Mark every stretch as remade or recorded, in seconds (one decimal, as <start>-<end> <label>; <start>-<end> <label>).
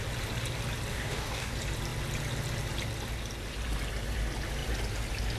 0.0-0.9 recorded; 0.9-1.5 remade; 1.5-5.4 recorded